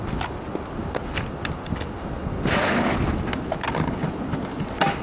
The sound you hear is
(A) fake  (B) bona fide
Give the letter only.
B